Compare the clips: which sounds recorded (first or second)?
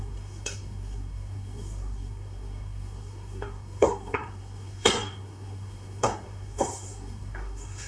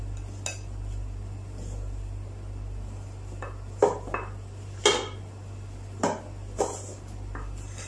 second